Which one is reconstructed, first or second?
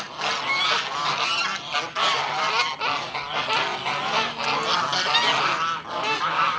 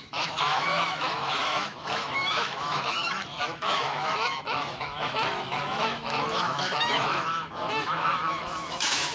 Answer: second